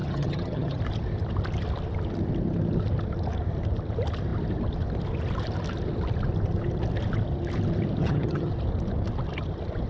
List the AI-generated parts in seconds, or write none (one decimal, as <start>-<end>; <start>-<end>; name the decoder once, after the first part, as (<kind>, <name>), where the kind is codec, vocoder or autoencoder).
0.0-0.8 (vocoder, HiFi-GAN); 8.0-8.5